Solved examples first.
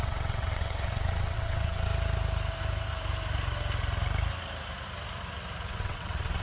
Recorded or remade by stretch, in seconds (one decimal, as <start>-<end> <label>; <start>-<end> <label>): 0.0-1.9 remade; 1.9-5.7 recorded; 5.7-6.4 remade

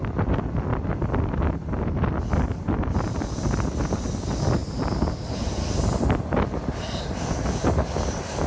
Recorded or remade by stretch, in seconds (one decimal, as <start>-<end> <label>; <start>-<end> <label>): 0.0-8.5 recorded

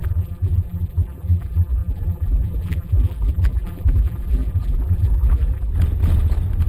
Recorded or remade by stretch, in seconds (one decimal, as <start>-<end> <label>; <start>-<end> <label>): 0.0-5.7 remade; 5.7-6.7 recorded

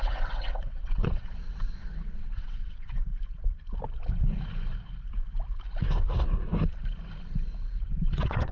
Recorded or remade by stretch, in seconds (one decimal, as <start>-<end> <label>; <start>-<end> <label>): 0.0-3.1 remade; 3.1-7.8 recorded; 7.8-8.5 remade

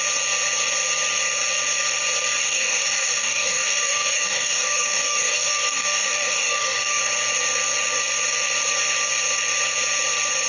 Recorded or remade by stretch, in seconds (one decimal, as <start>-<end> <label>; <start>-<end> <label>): 0.0-2.4 recorded; 2.4-7.0 remade; 7.0-10.5 recorded